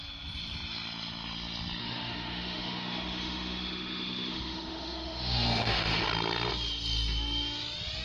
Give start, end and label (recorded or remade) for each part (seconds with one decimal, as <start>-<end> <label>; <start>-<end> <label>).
0.0-1.8 recorded; 1.8-6.0 remade; 6.0-8.0 recorded